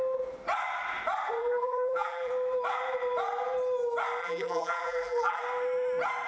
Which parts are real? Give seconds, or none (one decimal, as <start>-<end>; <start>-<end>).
0.0-1.4; 2.3-4.2; 5.4-6.3